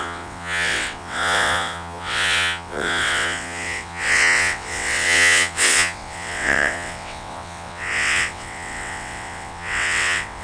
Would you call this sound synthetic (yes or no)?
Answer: yes